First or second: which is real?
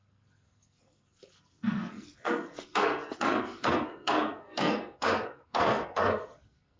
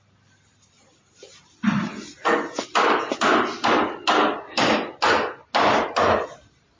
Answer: second